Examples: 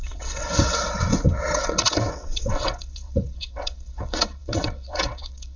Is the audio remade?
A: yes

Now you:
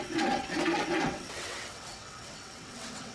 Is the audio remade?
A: yes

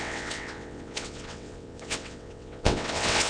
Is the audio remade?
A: yes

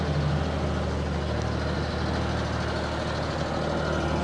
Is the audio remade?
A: no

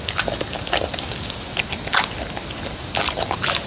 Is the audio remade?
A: no